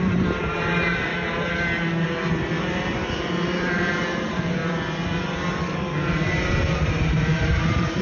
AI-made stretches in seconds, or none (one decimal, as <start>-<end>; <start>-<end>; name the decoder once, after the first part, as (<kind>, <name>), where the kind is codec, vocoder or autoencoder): 0.0-1.1 (vocoder, BigVGAN v2); 2.7-4.6; 5.8-8.0